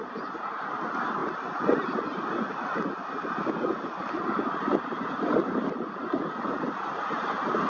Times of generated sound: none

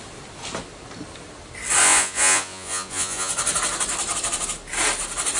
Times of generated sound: 1.8-3.3 (vocoder, Vocos)

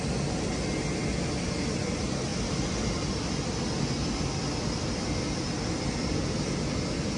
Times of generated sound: none

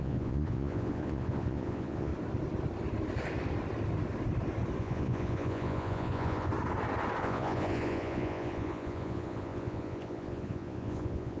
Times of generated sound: 0.0-2.1 (vocoder, Vocos); 4.8-6.5; 7.2-11.4